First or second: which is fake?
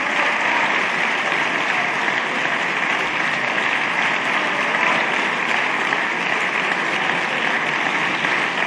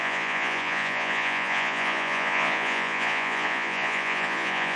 second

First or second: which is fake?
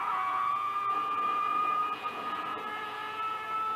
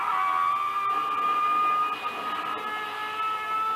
first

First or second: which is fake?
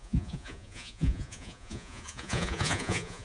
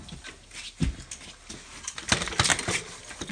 first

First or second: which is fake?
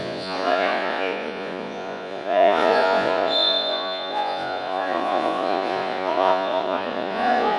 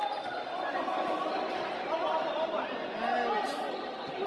first